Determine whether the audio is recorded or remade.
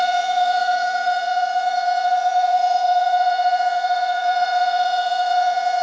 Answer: remade